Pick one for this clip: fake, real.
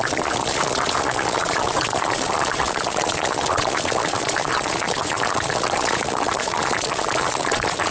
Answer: fake